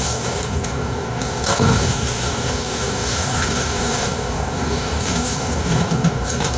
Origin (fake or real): fake